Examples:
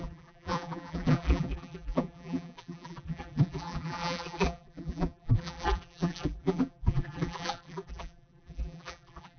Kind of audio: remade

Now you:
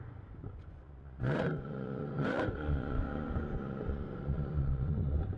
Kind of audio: remade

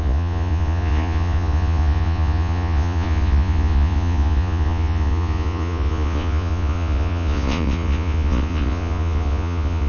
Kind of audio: remade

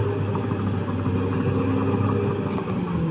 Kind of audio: recorded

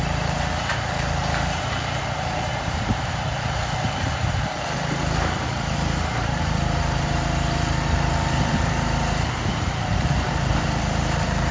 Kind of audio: remade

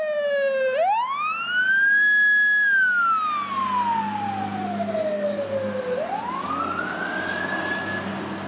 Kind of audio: recorded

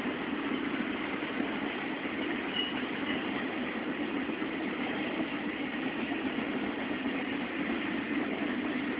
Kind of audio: recorded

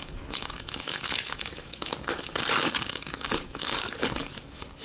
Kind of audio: remade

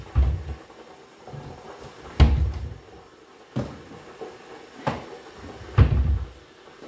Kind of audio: recorded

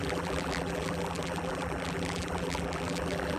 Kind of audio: remade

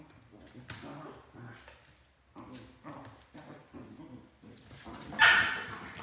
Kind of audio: recorded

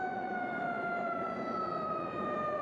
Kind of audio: remade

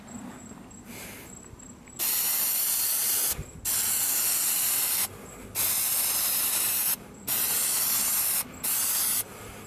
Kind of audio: recorded